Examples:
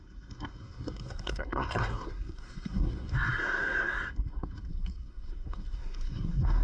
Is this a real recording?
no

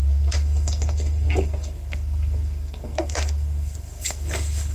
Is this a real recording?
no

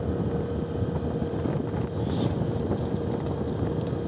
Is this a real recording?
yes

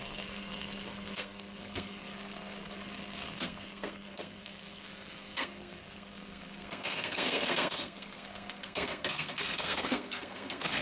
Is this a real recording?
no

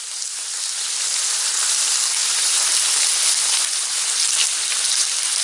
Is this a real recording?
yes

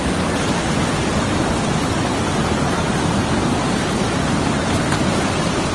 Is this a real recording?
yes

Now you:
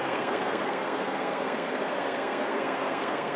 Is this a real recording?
no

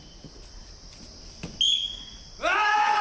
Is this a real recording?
yes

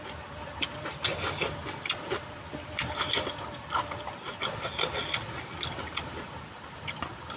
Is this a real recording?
yes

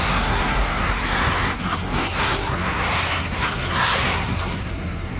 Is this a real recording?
no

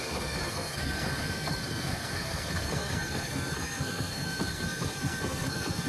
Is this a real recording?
no